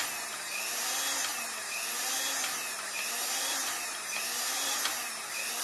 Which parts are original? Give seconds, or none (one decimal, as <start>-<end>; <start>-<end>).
0.0-2.5; 5.1-5.6